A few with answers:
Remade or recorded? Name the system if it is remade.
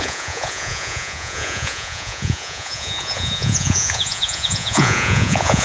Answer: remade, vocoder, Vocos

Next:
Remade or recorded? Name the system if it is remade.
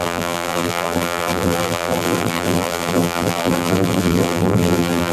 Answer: remade, vocoder, BigVGAN v2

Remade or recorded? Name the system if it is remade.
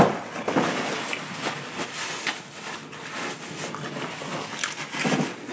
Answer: recorded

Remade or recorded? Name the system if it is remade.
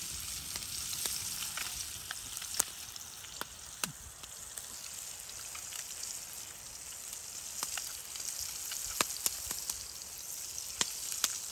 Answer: recorded